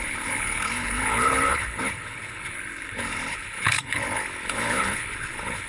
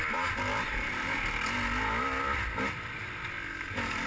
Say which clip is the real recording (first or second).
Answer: second